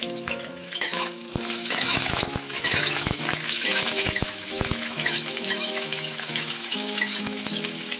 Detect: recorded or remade remade